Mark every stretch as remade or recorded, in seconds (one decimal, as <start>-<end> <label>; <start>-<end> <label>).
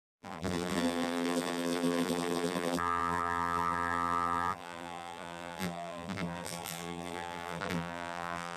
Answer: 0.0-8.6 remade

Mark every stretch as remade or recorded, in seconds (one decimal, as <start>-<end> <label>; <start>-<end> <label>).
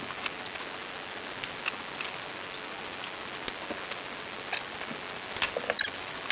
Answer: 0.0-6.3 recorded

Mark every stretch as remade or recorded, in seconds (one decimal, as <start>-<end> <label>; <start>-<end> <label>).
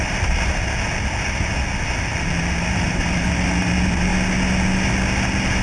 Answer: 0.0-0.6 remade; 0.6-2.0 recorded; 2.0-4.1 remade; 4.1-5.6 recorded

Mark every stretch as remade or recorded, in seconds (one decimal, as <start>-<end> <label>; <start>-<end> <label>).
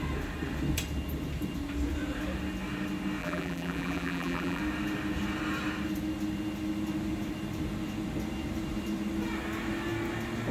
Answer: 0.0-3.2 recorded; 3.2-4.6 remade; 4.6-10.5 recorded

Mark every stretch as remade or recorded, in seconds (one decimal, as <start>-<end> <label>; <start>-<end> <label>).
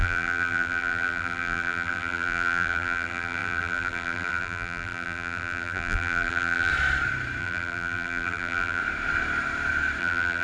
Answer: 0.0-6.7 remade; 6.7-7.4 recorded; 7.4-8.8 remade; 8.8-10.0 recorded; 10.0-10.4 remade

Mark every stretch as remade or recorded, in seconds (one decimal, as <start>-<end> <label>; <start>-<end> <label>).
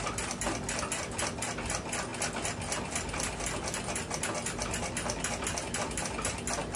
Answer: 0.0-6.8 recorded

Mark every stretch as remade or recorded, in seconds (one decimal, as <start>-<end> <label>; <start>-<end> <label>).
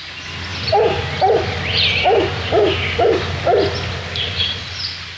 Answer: 0.0-5.2 recorded